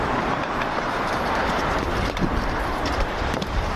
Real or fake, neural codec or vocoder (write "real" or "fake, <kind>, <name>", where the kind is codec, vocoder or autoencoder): fake, vocoder, BigVGAN v2